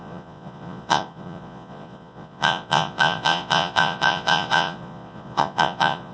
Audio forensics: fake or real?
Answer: fake